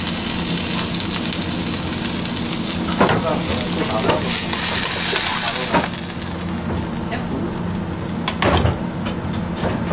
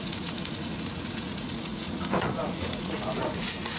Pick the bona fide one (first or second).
first